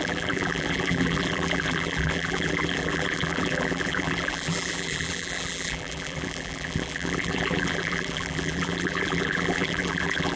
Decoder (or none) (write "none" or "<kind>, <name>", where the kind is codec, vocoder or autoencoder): vocoder, BigVGAN v2